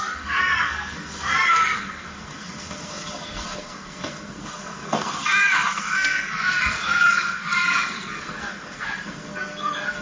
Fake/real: fake